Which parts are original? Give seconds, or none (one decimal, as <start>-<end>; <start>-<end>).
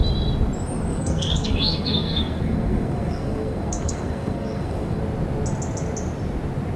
0.0-0.9; 5.0-6.8